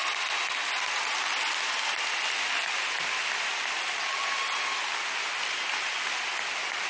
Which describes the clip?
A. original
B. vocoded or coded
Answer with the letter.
A